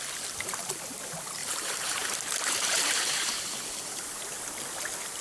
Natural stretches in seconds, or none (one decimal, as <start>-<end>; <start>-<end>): 0.0-1.4; 4.3-5.2